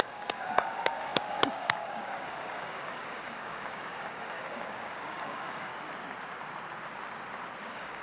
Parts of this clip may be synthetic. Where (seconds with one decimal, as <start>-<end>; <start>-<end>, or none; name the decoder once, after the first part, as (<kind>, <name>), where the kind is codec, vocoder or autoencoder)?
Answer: 0.0-5.7 (codec, DAC); 7.6-8.0